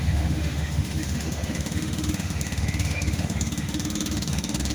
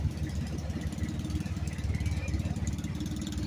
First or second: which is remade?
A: first